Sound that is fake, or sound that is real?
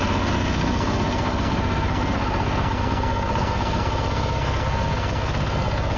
fake